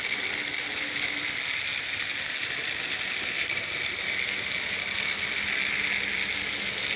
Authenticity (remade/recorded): recorded